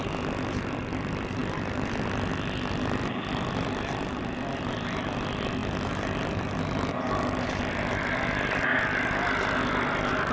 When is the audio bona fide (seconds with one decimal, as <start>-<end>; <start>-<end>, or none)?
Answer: 0.0-10.3